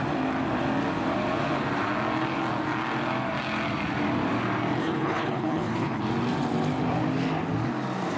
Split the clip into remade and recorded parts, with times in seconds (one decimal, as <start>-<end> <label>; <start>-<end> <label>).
0.0-4.8 recorded; 4.8-6.0 remade; 6.0-8.2 recorded

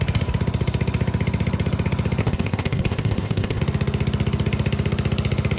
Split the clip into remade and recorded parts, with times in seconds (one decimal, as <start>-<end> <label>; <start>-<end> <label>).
0.0-2.2 recorded; 2.2-3.6 remade; 3.6-5.6 recorded

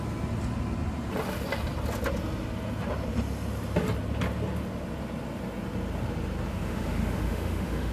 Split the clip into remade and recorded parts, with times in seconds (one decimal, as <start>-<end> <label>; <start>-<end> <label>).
0.0-6.5 recorded; 6.5-7.9 remade

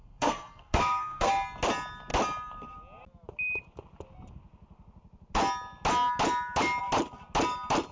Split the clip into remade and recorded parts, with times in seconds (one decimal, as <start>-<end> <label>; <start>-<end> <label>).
0.0-1.3 remade; 1.3-7.9 recorded

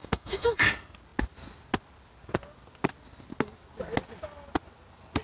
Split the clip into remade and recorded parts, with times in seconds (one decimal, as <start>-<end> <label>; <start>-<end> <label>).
0.0-0.7 remade; 0.7-5.2 recorded

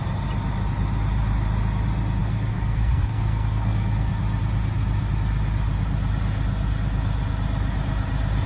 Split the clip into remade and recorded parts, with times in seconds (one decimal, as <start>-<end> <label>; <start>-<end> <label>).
0.0-2.2 recorded; 2.2-4.1 remade; 4.1-8.5 recorded